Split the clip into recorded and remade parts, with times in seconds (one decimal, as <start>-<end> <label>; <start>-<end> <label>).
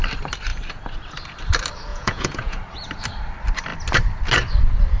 0.0-1.9 recorded; 1.9-2.6 remade; 2.6-5.0 recorded